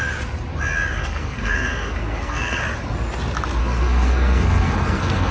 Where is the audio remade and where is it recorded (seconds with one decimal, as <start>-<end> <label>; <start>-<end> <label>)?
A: 0.0-1.0 recorded; 1.0-2.6 remade; 2.6-3.6 recorded; 3.6-5.3 remade